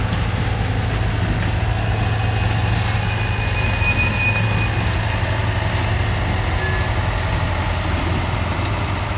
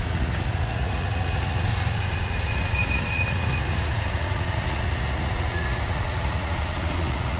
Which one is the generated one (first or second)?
second